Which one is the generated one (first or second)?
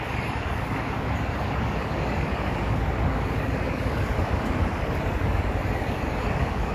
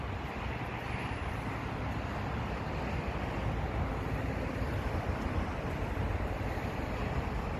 first